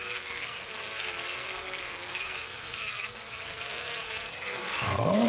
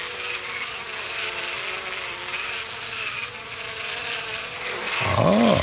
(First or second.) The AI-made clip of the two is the first